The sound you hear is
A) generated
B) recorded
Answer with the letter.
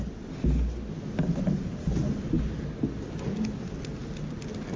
B